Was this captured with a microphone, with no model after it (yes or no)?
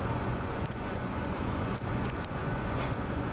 no